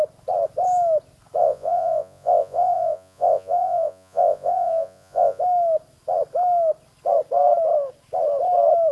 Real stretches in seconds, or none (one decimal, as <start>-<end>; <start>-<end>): 0.0-1.4; 5.4-8.9